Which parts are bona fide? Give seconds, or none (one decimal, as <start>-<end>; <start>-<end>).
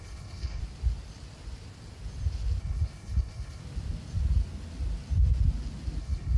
0.6-2.6; 3.6-6.0